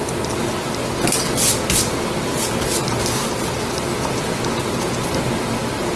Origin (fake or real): real